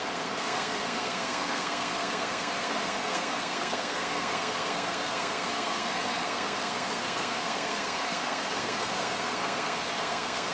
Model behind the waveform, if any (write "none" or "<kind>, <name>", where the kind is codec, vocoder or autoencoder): codec, SNAC